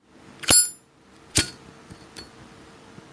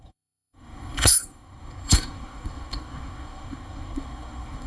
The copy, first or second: second